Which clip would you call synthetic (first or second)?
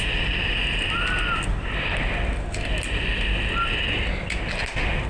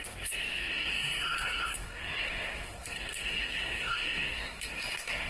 second